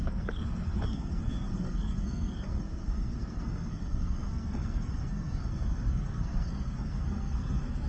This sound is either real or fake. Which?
fake